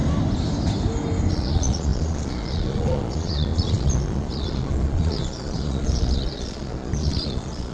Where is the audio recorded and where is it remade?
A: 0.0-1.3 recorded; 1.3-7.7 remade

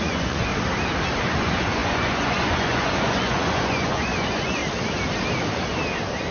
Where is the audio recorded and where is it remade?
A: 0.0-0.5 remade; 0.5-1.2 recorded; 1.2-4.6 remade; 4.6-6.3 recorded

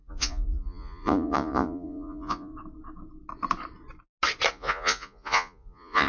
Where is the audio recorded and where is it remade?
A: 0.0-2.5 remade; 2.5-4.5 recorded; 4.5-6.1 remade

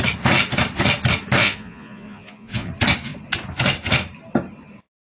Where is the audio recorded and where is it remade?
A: 0.0-1.4 recorded; 1.4-2.7 remade; 2.7-5.0 recorded

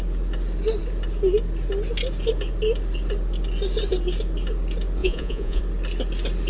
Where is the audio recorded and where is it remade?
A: 0.0-5.0 recorded; 5.0-5.6 remade; 5.6-6.5 recorded

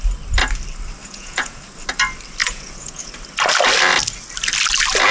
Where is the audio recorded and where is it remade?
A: 0.0-1.0 recorded; 1.0-1.6 remade; 1.6-2.4 recorded; 2.4-3.1 remade; 3.1-5.1 recorded

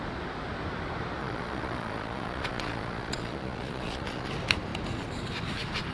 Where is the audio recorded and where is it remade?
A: 0.0-1.2 recorded; 1.2-4.3 remade; 4.3-5.9 recorded